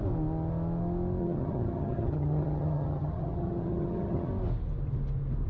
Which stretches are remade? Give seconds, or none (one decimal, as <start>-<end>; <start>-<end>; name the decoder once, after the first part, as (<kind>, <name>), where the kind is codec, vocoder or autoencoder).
1.2-4.3 (vocoder, HiFi-GAN)